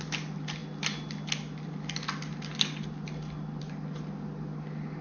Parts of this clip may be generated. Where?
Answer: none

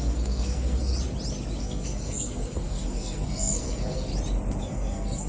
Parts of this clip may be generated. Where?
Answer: 0.0-0.9 (codec, SNAC); 1.6-4.1; 4.6-5.3